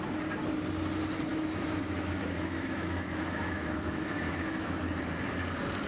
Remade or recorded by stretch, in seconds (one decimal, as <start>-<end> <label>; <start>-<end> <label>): 0.0-1.3 recorded; 1.3-4.8 remade; 4.8-5.9 recorded